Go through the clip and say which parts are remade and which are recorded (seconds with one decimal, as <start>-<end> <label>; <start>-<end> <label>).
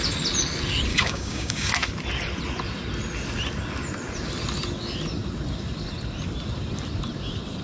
0.0-0.9 recorded; 0.9-1.7 remade; 1.7-7.6 recorded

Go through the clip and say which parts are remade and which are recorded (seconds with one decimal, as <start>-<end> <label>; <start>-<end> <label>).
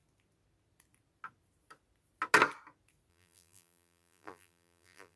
0.0-3.1 recorded; 3.1-5.2 remade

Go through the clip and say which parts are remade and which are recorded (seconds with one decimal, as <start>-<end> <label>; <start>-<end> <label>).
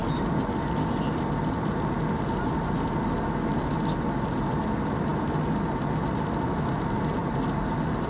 0.0-8.1 recorded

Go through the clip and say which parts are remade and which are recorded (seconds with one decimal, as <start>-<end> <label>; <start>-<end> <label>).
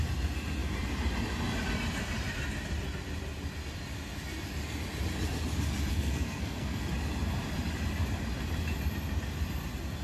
0.0-5.9 recorded; 5.9-6.9 remade; 6.9-10.0 recorded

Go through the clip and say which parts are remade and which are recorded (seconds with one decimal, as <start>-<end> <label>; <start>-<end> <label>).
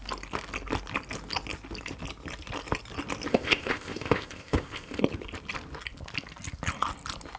0.0-3.3 recorded; 3.3-5.0 remade; 5.0-7.4 recorded